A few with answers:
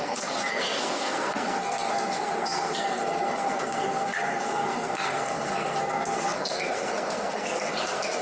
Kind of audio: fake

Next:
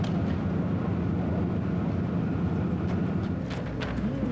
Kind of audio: real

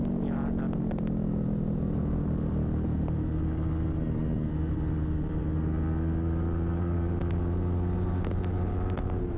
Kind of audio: real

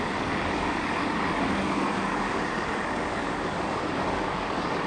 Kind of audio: fake